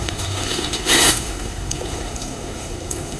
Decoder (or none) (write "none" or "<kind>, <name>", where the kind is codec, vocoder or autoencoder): codec, SNAC